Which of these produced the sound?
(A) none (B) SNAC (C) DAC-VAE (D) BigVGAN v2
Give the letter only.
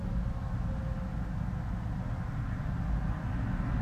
A